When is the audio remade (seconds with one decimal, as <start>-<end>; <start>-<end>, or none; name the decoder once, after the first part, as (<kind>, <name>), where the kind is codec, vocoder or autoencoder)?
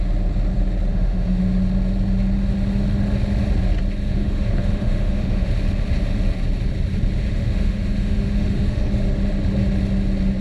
0.9-1.4 (autoencoder, DAC-VAE); 4.0-5.5; 7.2-8.9